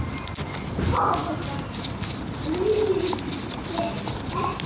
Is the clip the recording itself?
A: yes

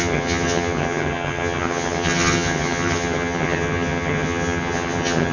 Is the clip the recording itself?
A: no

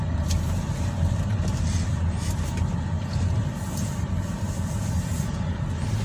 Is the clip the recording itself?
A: yes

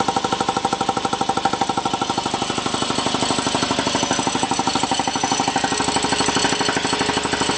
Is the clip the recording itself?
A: yes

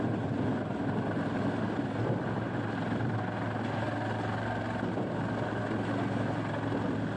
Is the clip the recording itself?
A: yes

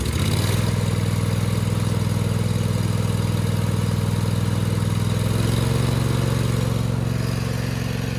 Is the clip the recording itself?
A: yes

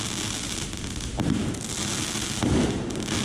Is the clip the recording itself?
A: yes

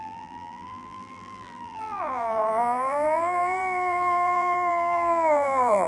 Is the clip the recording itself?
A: no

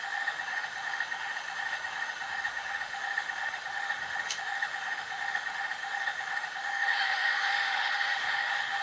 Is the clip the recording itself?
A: no